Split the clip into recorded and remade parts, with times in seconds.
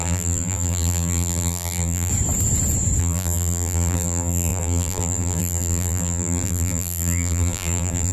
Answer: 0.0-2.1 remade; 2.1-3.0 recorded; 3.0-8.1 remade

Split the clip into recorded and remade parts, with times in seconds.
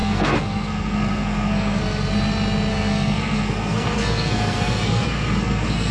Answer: 0.0-1.8 remade; 1.8-2.7 recorded; 2.7-5.9 remade